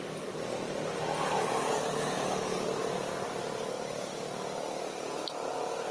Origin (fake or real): real